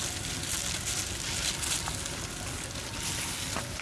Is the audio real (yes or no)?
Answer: yes